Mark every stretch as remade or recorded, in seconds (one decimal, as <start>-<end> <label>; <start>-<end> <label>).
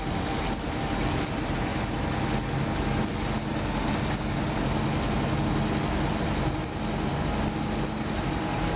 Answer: 0.0-8.8 recorded